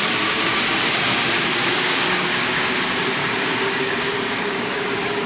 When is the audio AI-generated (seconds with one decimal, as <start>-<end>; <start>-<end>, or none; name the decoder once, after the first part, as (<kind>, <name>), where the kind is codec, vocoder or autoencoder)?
1.5-2.8 (codec, DAC); 3.2-5.3